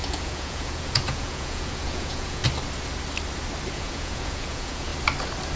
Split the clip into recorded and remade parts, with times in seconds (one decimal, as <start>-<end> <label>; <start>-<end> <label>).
0.0-2.4 remade; 2.4-3.7 recorded; 3.7-4.9 remade; 4.9-5.6 recorded